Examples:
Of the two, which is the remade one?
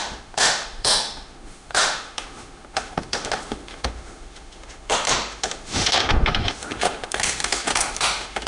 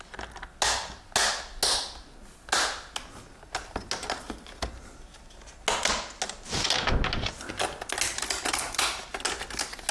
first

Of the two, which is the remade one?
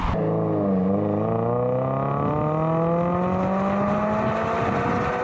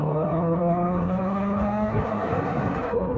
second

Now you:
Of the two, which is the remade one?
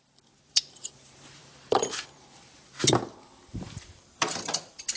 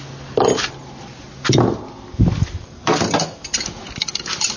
first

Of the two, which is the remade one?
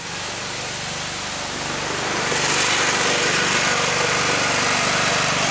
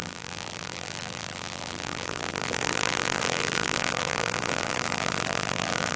second